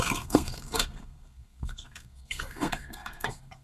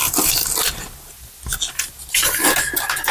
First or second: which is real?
second